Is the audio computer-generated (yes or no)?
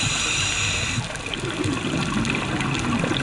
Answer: no